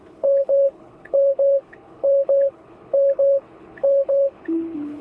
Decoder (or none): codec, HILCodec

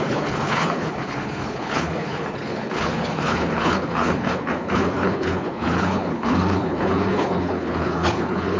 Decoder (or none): codec, HILCodec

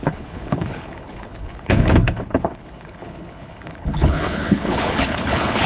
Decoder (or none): codec, HILCodec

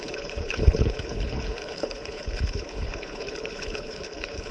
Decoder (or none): codec, HILCodec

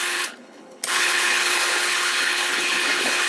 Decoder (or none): codec, HILCodec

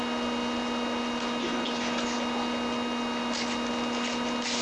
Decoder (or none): none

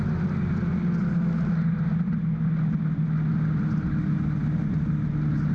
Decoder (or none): none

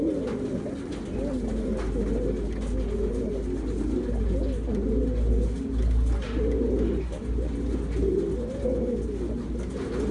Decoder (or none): none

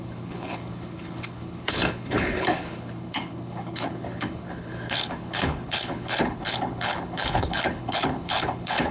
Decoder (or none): codec, HILCodec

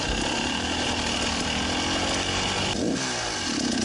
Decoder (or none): none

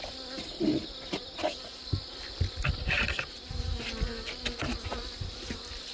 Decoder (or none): none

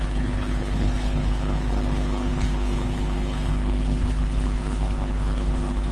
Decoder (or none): codec, HILCodec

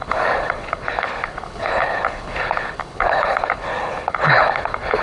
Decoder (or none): codec, HILCodec